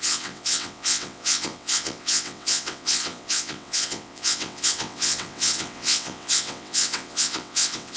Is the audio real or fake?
fake